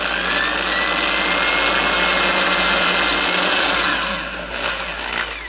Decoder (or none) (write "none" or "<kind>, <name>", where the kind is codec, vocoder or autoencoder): none